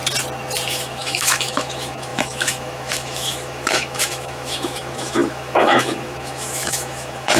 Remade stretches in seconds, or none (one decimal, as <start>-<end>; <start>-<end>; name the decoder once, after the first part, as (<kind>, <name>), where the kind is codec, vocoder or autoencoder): 0.7-7.4 (autoencoder, DAC-VAE)